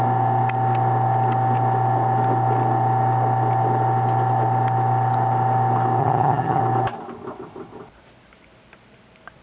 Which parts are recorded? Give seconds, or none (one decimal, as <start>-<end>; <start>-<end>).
0.0-6.0; 6.6-9.4

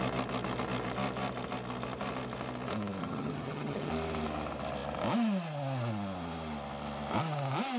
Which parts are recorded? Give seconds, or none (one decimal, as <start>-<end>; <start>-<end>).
0.0-3.0; 3.9-7.8

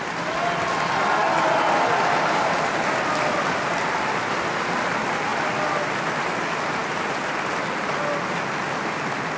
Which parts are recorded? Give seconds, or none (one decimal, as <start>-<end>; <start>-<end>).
0.0-9.4

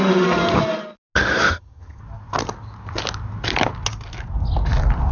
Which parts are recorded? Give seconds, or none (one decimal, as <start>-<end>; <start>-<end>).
0.0-1.5; 2.0-5.1

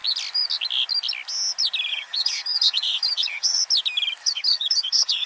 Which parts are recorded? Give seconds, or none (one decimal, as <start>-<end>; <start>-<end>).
0.0-1.9; 3.6-4.2